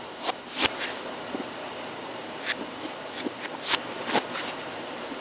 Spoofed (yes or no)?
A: yes